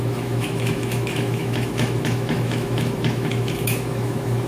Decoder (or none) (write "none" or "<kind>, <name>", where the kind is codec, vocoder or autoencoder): autoencoder, DAC-VAE